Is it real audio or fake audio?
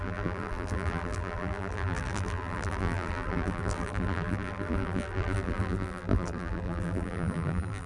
fake